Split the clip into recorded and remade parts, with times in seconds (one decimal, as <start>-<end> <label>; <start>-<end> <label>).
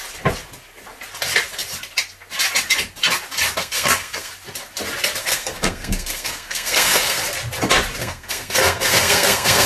0.0-3.6 recorded; 3.6-4.3 remade; 4.3-5.2 recorded; 5.2-7.2 remade; 7.2-8.0 recorded; 8.0-9.7 remade